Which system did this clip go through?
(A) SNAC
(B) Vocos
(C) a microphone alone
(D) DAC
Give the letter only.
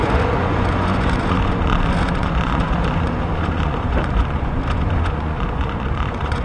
B